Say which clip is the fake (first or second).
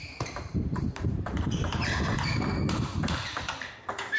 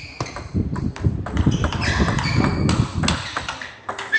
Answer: first